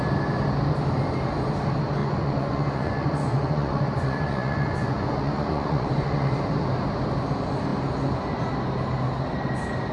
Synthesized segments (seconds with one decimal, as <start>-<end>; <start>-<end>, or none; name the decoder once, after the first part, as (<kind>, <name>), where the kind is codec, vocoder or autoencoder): 2.0-6.3 (vocoder, Vocos)